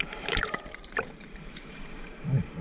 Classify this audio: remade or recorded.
remade